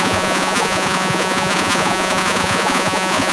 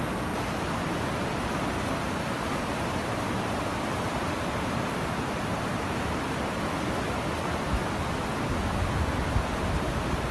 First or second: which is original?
second